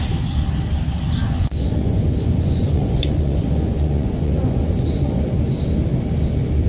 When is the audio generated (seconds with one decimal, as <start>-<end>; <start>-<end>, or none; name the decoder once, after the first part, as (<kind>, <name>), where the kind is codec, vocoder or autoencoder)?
1.2-5.2 (vocoder, Vocos)